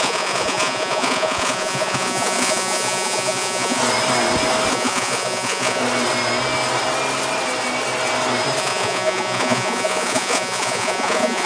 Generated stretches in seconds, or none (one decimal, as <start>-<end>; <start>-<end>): 0.0-3.8; 4.7-5.8; 8.6-11.5